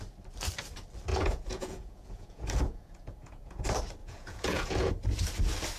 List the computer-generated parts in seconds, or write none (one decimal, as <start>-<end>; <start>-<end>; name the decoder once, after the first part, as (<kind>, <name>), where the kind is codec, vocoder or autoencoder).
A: 1.1-3.6 (vocoder, Vocos); 4.0-4.9